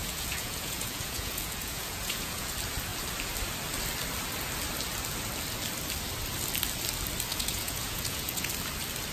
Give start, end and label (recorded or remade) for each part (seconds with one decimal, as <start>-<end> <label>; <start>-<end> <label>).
0.0-2.5 remade; 2.5-7.3 recorded; 7.3-8.5 remade; 8.5-9.1 recorded